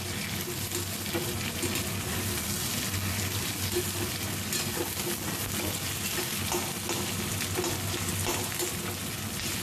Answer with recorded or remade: recorded